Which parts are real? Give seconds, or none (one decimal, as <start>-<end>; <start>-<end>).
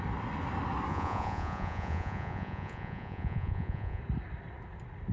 0.0-0.9; 4.0-5.1